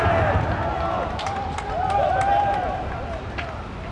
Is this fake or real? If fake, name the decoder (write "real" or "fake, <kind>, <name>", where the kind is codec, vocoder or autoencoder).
real